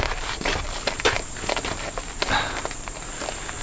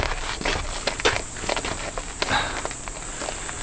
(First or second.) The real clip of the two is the second